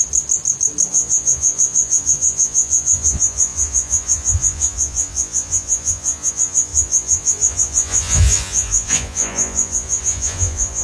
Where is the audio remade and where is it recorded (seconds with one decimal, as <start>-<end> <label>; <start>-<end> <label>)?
0.0-0.9 recorded; 0.9-10.8 remade

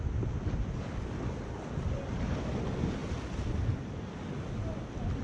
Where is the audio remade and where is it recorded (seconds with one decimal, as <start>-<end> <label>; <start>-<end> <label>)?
0.0-5.2 recorded

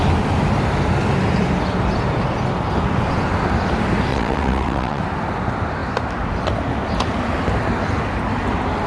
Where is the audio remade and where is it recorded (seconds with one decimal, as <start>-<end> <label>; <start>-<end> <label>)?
0.0-4.1 recorded; 4.1-5.0 remade; 5.0-8.9 recorded